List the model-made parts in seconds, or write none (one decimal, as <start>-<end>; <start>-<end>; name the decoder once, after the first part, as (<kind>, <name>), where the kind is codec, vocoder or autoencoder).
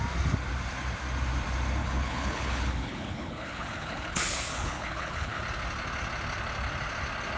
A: 1.8-5.4 (codec, HILCodec)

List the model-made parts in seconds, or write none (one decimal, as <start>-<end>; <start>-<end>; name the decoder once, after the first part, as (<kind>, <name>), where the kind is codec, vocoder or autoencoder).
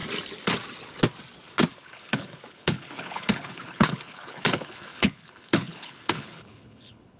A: 1.7-7.2 (codec, HILCodec)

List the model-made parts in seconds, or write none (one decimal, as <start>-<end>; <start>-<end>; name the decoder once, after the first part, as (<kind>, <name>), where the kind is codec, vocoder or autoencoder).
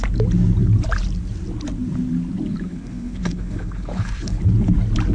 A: 2.7-4.4 (codec, HILCodec)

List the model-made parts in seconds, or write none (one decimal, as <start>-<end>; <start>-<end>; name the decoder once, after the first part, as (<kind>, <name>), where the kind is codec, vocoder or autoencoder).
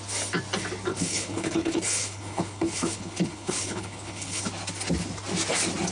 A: 0.9-4.4 (codec, HILCodec)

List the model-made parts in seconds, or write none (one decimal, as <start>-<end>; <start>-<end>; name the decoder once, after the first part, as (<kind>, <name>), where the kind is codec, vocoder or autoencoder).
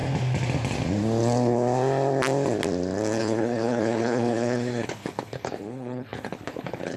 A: 3.2-7.0 (codec, HILCodec)